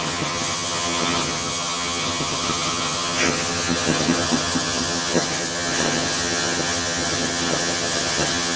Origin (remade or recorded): remade